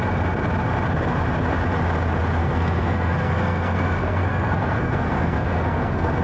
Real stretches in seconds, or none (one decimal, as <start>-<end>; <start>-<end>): 0.0-2.4